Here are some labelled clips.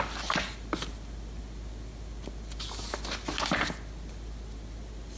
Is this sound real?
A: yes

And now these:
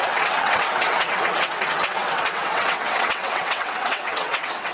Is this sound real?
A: no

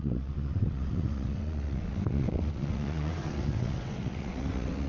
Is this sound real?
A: no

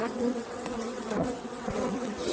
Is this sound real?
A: no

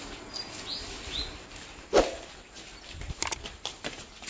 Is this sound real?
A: yes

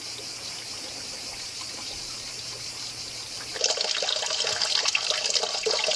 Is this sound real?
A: yes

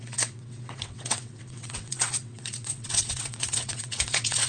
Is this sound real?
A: no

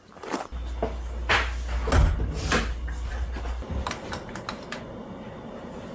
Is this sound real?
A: yes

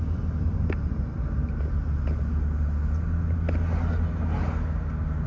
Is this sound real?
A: yes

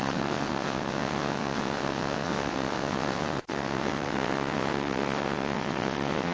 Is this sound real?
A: no